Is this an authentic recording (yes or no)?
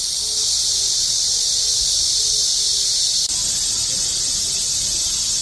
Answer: yes